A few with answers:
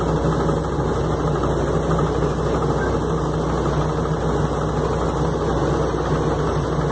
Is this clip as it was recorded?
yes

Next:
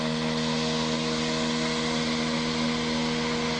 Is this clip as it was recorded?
yes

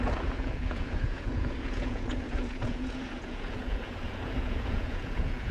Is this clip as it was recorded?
no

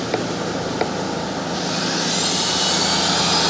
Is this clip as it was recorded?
yes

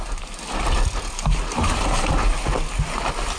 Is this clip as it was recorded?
yes